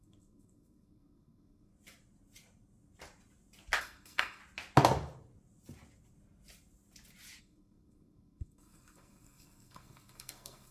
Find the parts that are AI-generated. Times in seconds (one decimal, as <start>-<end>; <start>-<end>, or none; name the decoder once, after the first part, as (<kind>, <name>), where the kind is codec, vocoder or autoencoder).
0.0-1.7 (codec, SNAC); 3.8-4.4; 7.4-10.7